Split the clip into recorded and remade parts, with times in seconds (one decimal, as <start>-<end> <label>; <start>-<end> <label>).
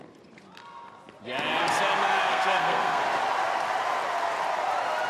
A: 0.0-2.3 recorded; 2.3-3.0 remade; 3.0-5.1 recorded